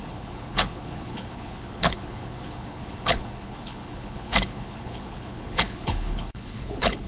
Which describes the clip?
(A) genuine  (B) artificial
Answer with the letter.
B